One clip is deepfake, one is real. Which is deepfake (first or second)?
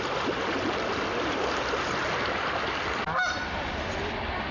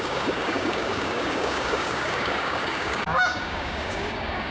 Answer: second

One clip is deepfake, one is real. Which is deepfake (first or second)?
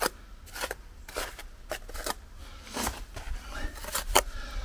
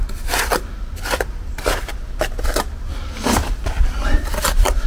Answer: second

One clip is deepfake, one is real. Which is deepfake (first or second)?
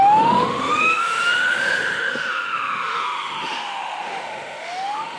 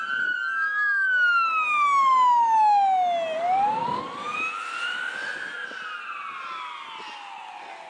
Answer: first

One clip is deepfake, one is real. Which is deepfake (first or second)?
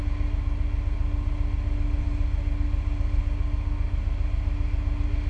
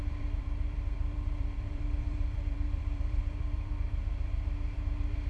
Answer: second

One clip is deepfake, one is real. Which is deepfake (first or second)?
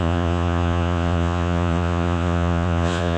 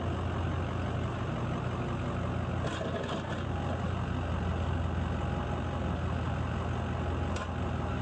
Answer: first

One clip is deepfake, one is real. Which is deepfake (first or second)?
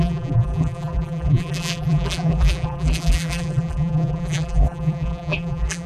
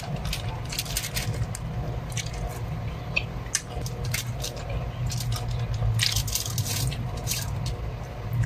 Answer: first